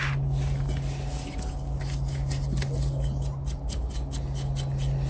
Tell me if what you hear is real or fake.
real